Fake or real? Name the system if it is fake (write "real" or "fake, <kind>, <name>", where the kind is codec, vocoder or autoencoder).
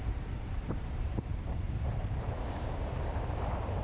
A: fake, vocoder, BigVGAN v2